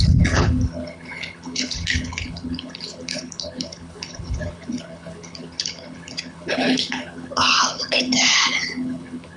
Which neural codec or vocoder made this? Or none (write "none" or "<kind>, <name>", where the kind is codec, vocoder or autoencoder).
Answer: codec, HILCodec